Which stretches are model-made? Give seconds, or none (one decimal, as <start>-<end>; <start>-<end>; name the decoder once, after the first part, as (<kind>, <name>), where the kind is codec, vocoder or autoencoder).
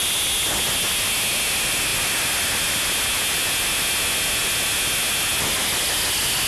none